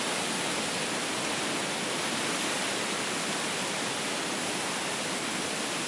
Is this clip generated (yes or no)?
no